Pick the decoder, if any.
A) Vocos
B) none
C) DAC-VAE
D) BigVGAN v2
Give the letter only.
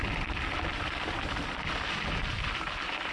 D